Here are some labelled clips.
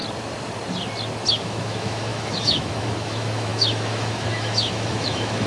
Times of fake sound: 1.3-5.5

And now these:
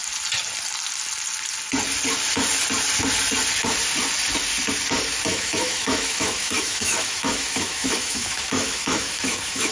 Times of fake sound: 5.3-9.7

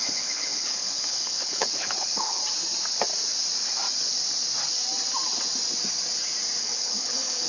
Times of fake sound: 0.0-2.4; 6.6-7.5

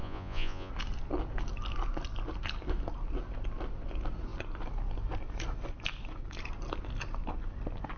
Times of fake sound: 0.0-0.7

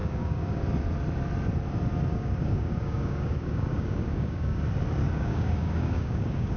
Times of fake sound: 0.0-0.6; 2.1-4.6; 5.0-6.6

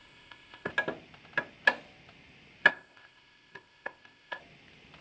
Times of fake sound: 0.0-0.7; 2.7-4.4

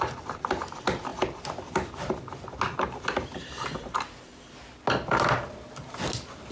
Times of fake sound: none